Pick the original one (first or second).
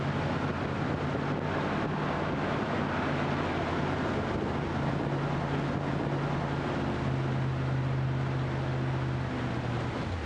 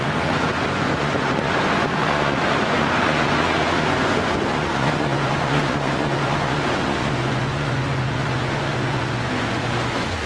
first